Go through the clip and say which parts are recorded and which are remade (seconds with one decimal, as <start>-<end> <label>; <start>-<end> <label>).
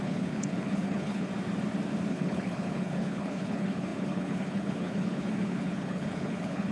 0.0-1.3 remade; 1.3-2.1 recorded; 2.1-6.7 remade